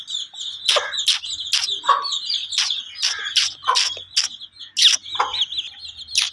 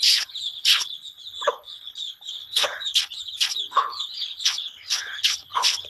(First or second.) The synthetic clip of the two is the second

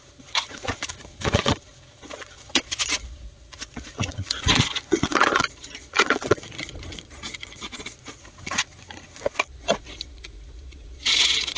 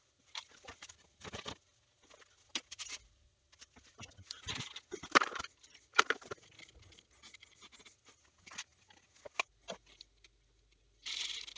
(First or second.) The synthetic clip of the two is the first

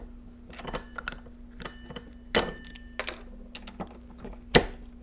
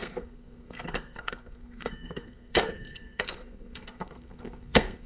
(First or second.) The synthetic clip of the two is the second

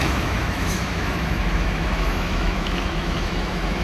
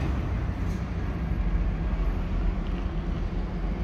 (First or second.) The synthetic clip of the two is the first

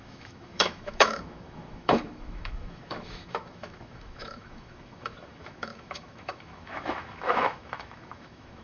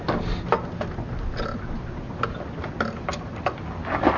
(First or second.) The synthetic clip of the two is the first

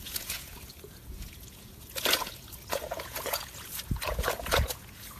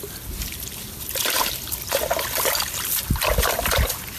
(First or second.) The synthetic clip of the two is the first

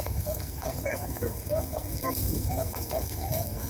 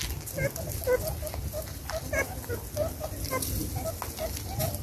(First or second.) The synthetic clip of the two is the first